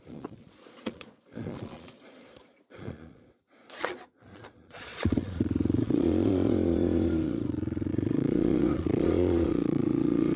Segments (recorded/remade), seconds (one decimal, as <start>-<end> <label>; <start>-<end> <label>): 0.0-10.4 remade